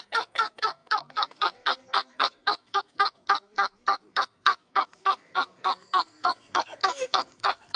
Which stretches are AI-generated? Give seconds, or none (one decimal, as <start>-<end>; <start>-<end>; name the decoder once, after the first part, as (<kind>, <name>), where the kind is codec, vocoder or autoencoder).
0.0-7.8 (codec, SNAC)